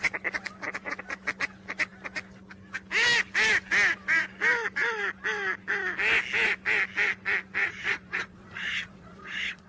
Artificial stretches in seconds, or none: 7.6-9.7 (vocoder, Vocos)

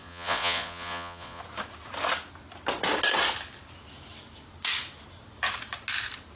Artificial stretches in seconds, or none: 0.0-1.4 (vocoder, Vocos)

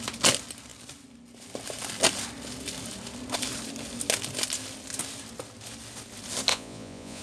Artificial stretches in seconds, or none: 6.5-7.2 (vocoder, Vocos)

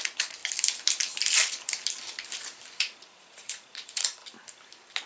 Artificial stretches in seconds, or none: 0.0-0.4 (vocoder, Vocos); 2.8-4.2

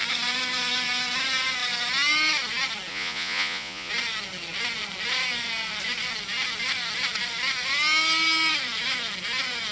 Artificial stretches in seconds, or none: 2.9-3.9 (vocoder, Vocos)

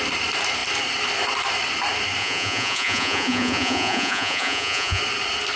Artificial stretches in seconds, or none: 2.2-5.0 (vocoder, Vocos)